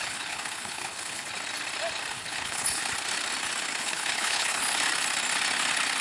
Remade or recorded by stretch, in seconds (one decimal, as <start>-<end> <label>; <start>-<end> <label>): 0.0-1.3 remade; 1.3-2.1 recorded; 2.1-2.8 remade; 2.8-3.8 recorded; 3.8-4.6 remade; 4.6-6.0 recorded